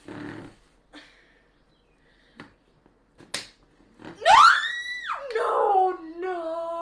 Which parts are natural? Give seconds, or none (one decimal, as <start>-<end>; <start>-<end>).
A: 0.0-6.8

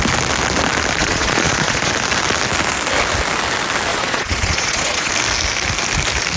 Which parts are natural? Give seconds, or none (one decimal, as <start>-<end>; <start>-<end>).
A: 0.0-1.0; 1.9-3.9; 5.1-6.4

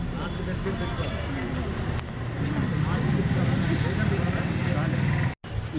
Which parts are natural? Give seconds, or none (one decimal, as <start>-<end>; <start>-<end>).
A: 0.0-5.8

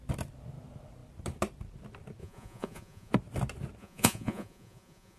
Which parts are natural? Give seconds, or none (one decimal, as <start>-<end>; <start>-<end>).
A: 0.0-2.2; 3.1-3.8

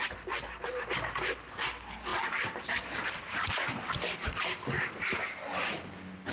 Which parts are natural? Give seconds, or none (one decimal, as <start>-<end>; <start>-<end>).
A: 0.0-6.3

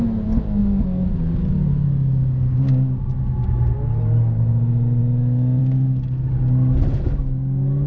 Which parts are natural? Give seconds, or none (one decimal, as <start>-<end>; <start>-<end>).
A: 0.0-7.9